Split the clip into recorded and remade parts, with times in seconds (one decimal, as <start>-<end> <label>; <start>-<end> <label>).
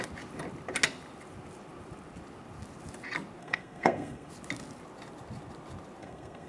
0.0-3.4 recorded; 3.4-4.3 remade; 4.3-6.0 recorded; 6.0-6.5 remade